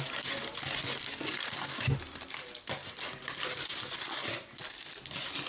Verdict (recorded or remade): recorded